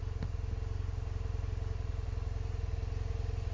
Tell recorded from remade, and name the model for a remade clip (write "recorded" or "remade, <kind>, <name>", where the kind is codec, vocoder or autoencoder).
recorded